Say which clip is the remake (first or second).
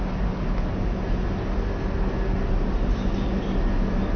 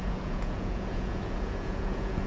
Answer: second